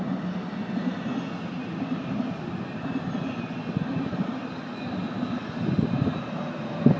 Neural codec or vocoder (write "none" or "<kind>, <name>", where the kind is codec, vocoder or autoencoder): none